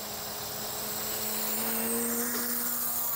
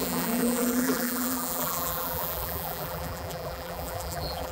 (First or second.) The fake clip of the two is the second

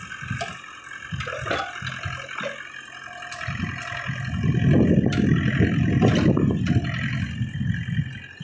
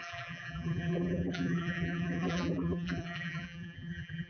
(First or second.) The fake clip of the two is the second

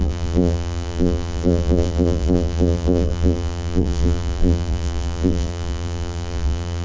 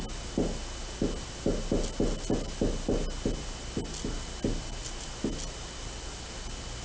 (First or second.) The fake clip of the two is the first